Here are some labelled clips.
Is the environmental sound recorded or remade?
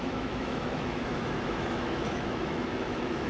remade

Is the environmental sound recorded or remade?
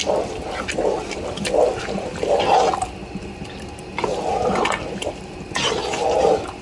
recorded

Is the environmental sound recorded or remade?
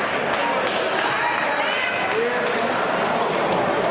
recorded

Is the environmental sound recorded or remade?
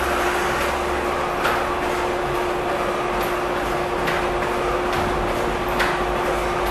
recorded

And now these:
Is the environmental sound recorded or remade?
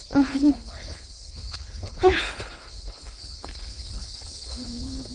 remade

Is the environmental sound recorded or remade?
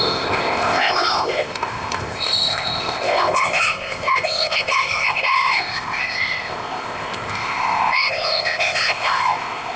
remade